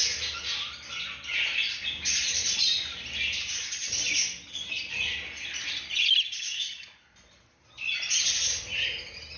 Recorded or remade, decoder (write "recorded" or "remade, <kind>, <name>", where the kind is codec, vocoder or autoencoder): recorded